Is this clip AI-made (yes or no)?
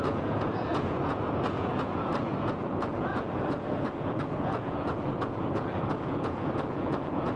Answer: yes